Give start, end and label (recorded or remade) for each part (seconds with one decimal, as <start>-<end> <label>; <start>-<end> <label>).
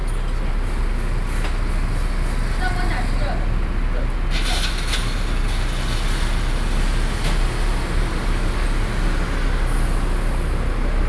0.0-11.1 recorded